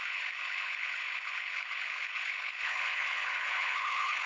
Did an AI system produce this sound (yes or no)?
yes